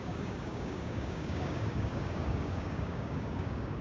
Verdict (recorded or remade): remade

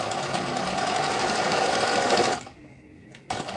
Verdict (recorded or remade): remade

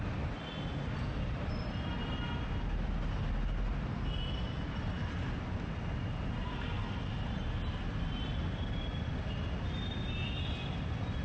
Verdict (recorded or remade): recorded